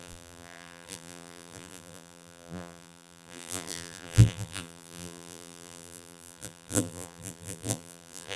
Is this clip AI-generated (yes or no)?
yes